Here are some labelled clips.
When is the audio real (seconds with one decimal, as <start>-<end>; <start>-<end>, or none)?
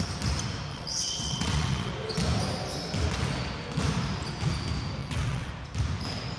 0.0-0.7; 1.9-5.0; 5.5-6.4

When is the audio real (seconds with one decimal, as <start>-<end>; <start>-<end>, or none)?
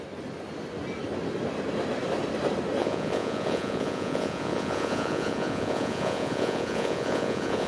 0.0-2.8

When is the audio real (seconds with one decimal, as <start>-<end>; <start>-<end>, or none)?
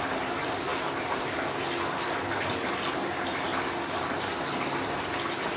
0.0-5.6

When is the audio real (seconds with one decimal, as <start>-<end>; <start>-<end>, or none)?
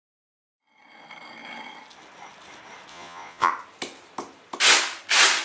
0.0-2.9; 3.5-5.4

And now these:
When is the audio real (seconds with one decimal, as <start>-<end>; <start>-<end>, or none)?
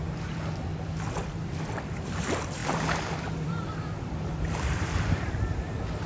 0.7-1.3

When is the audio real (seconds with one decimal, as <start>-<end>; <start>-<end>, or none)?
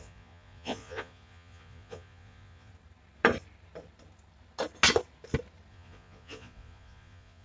2.7-5.7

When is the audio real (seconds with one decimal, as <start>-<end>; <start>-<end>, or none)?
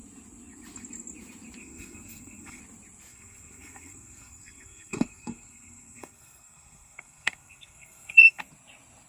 0.0-1.6; 2.6-3.1; 8.4-9.1